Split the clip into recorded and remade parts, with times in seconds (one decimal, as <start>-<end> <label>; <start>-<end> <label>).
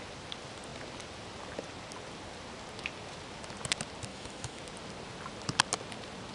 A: 0.0-4.1 recorded; 4.1-4.6 remade; 4.6-6.3 recorded